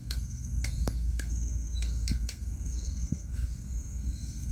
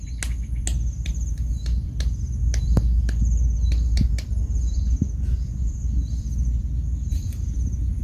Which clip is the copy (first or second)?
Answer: first